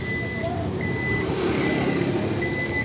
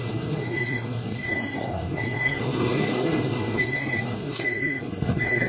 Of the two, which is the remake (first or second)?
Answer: second